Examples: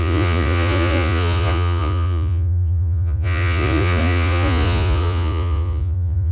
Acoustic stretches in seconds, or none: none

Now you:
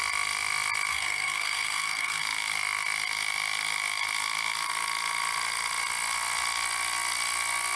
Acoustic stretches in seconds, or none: 0.0-0.9; 2.2-7.8

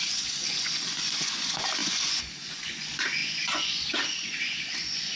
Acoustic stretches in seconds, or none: none

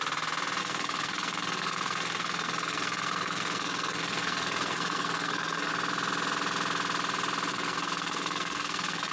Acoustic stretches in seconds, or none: 0.0-0.6; 5.7-7.5

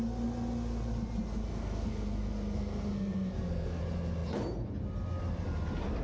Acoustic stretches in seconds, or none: 0.0-1.5; 3.8-6.0

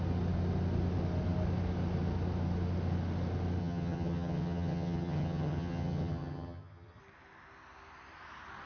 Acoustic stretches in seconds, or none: 0.0-3.6; 7.0-8.7